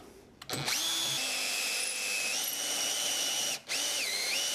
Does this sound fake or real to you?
real